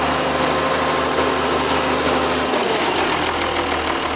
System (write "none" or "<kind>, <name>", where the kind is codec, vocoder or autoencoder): none